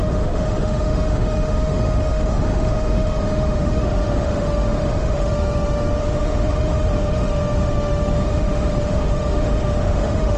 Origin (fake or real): fake